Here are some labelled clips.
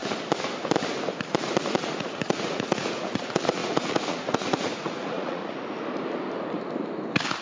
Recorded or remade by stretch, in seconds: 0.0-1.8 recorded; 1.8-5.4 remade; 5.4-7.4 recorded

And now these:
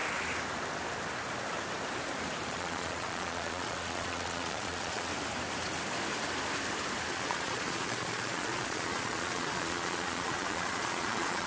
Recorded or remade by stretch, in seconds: 0.0-2.5 recorded; 2.5-5.1 remade; 5.1-7.1 recorded; 7.1-11.5 remade

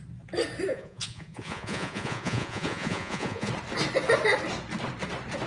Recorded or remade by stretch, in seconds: 0.0-0.7 recorded; 0.7-3.5 remade; 3.5-5.5 recorded